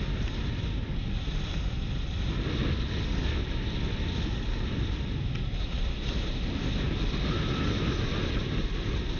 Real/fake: real